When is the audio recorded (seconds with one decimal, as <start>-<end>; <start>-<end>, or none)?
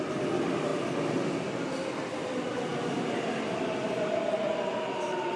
0.0-5.4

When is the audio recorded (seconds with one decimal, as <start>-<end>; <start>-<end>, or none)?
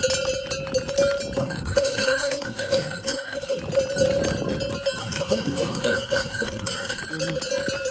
0.0-1.4; 3.6-5.0; 7.0-7.9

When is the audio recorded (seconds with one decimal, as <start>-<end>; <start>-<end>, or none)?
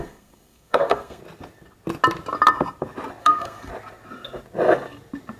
1.2-3.2; 3.7-5.4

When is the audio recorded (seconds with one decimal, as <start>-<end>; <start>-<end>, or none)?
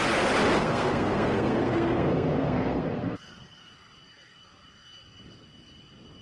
0.0-0.6; 3.7-6.2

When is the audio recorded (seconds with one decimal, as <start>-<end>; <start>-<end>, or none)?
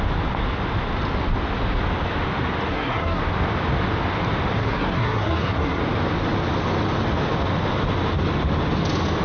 0.0-2.7; 3.2-4.6; 5.8-9.2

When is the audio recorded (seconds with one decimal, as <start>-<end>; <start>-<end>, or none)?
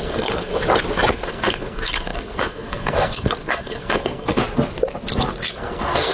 0.5-1.1; 4.4-5.5